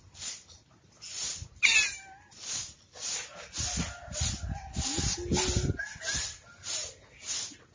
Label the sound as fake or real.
real